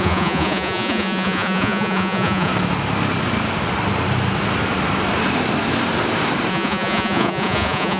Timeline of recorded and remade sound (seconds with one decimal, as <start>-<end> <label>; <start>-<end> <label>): 0.0-2.5 remade; 2.5-6.5 recorded; 6.5-8.0 remade